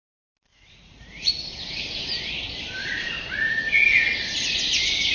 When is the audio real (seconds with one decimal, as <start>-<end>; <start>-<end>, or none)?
0.0-0.5; 1.3-2.8; 4.1-5.1